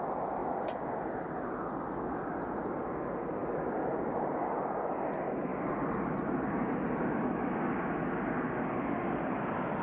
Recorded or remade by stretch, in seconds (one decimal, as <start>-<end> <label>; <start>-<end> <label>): 0.0-9.8 recorded